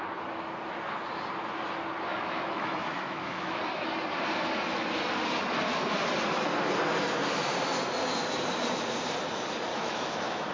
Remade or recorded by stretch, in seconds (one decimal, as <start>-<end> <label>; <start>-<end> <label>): 0.0-2.1 recorded; 2.1-3.6 remade; 3.6-9.7 recorded; 9.7-10.5 remade